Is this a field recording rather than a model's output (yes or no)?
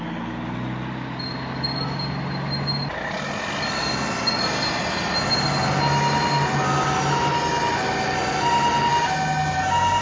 yes